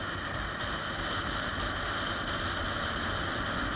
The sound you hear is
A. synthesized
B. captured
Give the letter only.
B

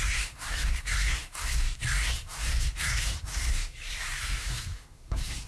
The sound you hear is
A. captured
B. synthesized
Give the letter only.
B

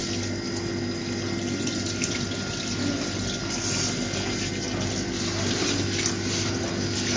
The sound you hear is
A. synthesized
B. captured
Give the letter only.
B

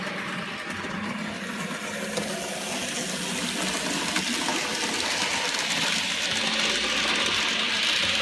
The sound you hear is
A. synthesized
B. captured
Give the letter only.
B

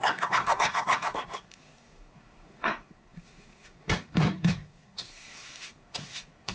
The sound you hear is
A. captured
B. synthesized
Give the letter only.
B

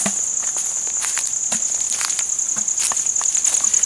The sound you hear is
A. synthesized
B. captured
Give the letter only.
B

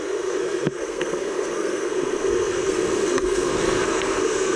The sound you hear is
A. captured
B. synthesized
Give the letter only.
B